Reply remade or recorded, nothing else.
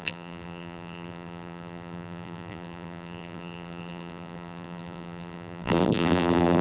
remade